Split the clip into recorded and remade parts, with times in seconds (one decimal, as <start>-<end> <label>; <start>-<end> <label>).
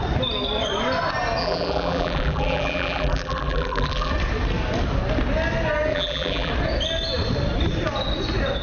0.0-1.4 recorded; 1.4-4.1 remade; 4.1-5.9 recorded; 5.9-6.5 remade; 6.5-8.6 recorded